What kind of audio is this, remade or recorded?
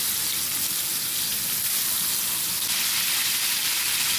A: recorded